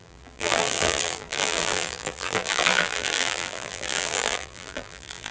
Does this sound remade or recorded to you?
remade